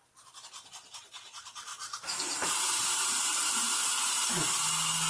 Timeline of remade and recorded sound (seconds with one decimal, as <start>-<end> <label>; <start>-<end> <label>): 0.0-1.7 recorded; 1.7-4.0 remade; 4.0-5.1 recorded